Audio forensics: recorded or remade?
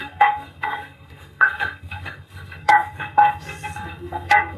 remade